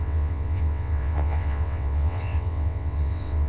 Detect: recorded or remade remade